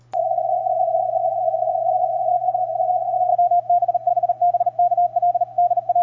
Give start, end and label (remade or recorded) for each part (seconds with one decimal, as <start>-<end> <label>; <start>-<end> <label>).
0.0-0.6 recorded; 0.6-4.1 remade; 4.1-6.0 recorded